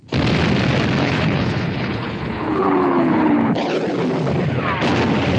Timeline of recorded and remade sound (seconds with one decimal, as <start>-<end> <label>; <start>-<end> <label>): 0.0-1.0 recorded; 1.0-3.8 remade; 3.8-5.4 recorded